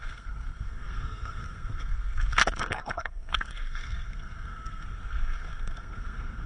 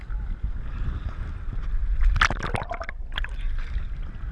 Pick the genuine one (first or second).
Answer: second